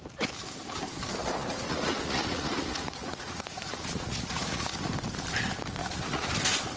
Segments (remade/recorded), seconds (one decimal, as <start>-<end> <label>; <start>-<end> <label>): 0.0-1.2 recorded; 1.2-4.9 remade; 4.9-5.8 recorded; 5.8-6.3 remade; 6.3-6.8 recorded